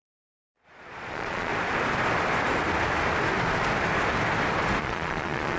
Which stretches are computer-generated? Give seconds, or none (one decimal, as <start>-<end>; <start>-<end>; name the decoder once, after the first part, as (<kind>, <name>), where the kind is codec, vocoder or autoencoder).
0.0-1.5 (vocoder, Vocos); 4.8-5.6